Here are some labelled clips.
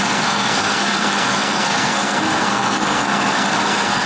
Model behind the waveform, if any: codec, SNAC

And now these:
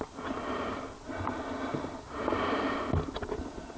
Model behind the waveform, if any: none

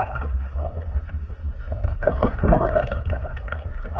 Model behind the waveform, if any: codec, SNAC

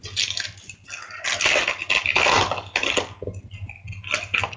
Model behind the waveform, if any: none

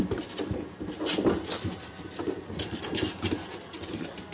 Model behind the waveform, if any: none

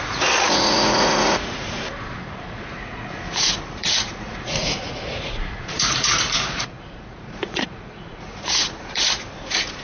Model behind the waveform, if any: vocoder, Vocos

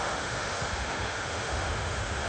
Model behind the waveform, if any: autoencoder, DAC-VAE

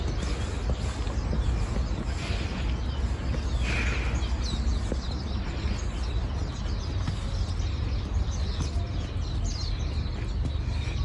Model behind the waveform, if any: none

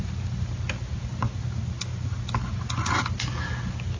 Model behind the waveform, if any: none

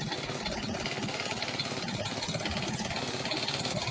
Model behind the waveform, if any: none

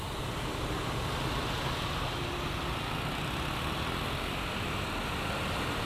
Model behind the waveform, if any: none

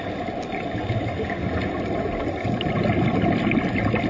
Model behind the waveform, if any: none